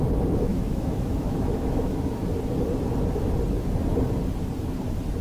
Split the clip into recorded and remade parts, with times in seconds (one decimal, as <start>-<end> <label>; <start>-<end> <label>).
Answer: 0.0-0.5 recorded; 0.5-2.2 remade; 2.2-5.2 recorded